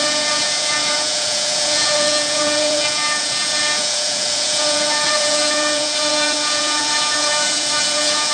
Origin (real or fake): fake